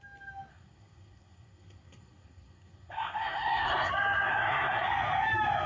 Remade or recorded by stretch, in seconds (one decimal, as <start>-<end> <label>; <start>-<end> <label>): 0.0-0.5 recorded; 0.5-3.9 remade; 3.9-4.3 recorded; 4.3-4.9 remade; 4.9-5.7 recorded